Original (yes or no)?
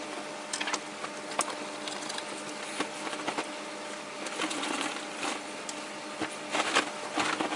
yes